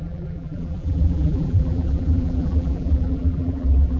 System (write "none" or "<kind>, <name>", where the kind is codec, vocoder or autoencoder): vocoder, BigVGAN v2